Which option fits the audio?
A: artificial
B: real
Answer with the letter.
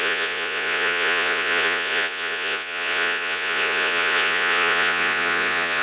A